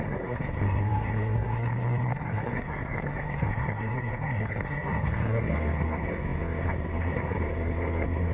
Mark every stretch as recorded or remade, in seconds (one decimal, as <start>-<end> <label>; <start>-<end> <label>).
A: 0.0-8.3 remade